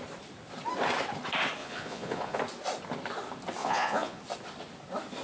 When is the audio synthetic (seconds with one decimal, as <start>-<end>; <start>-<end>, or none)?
1.6-2.4; 3.6-4.2